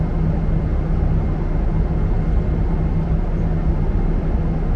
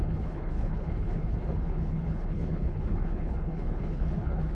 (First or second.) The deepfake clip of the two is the second